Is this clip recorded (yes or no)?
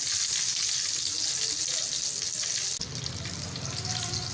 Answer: yes